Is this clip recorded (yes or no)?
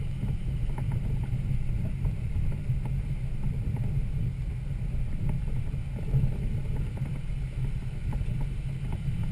yes